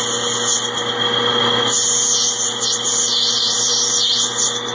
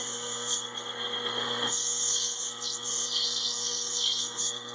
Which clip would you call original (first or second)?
first